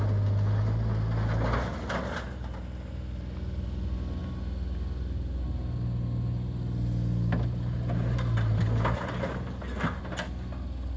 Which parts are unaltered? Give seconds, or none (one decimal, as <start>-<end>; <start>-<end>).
0.0-11.0